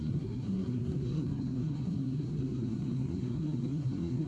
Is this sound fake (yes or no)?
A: yes